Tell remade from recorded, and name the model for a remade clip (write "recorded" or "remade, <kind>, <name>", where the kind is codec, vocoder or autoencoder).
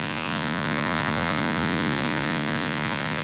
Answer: remade, vocoder, Vocos